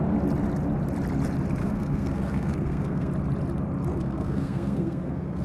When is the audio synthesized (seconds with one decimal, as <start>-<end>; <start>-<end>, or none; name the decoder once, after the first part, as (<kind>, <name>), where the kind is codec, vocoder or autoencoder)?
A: 1.6-3.1 (codec, SNAC); 3.9-5.4